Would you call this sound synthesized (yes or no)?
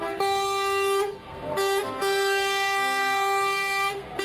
yes